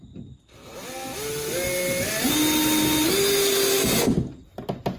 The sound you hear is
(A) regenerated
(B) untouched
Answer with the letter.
B